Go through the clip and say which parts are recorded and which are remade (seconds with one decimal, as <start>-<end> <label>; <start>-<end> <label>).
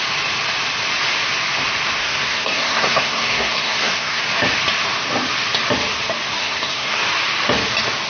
0.0-2.0 recorded; 2.0-4.2 remade; 4.2-6.4 recorded; 6.4-7.0 remade; 7.0-8.1 recorded